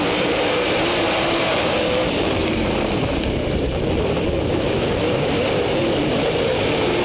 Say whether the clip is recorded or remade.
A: remade